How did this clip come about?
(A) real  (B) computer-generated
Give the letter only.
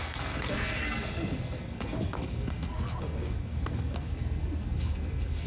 B